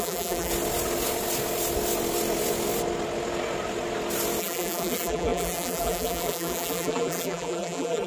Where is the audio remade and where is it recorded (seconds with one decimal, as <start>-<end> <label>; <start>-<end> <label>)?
0.0-0.5 remade; 0.5-4.4 recorded; 4.4-8.1 remade